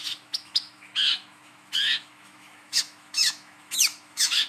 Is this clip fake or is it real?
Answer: fake